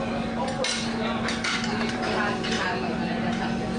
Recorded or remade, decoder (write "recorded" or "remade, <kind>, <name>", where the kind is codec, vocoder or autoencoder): recorded